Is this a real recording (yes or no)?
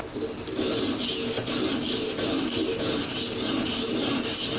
yes